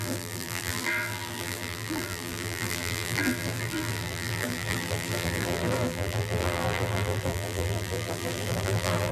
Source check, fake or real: fake